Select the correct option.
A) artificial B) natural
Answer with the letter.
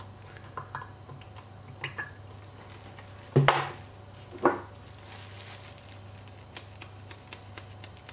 B